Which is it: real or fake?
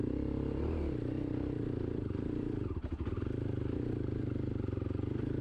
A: real